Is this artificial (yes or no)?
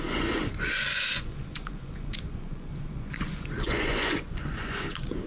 yes